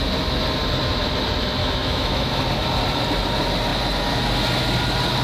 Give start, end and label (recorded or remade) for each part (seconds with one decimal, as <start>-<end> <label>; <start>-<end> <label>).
0.0-1.6 recorded; 1.6-2.3 remade; 2.3-5.2 recorded